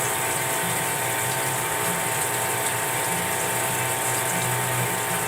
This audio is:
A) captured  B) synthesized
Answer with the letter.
A